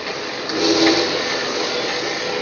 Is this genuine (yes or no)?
yes